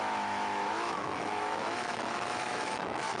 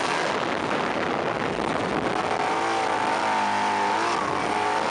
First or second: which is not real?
first